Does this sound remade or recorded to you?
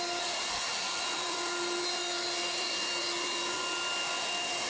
recorded